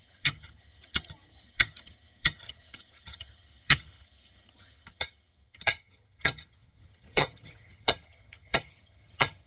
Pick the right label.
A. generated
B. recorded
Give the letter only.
A